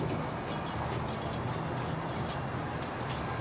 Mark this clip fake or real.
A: real